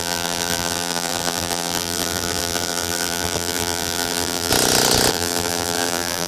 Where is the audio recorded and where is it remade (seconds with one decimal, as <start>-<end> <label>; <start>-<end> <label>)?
0.0-4.5 remade; 4.5-5.1 recorded; 5.1-6.3 remade